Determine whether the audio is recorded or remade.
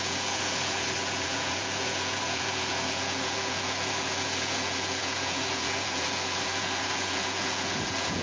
remade